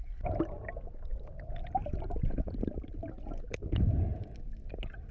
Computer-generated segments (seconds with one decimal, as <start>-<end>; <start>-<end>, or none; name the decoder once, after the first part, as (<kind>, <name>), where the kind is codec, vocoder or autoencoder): none